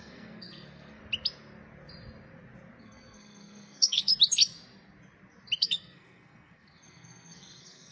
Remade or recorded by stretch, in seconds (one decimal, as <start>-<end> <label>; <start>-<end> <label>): 0.0-1.0 remade; 1.0-2.8 recorded; 2.8-4.1 remade; 4.1-5.6 recorded; 5.6-7.9 remade